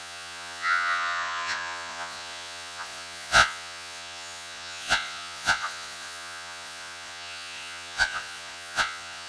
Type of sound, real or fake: fake